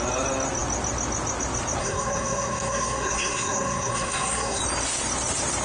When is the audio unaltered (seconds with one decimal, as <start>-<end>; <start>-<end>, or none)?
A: 0.0-1.8; 4.6-5.6